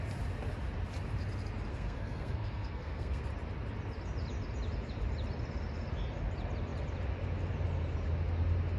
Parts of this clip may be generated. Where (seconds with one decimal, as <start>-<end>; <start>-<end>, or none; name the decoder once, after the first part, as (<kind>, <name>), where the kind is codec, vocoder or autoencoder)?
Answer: 1.7-3.2 (codec, SNAC)